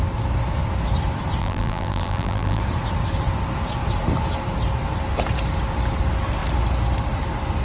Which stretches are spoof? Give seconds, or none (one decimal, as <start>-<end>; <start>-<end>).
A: 1.4-2.6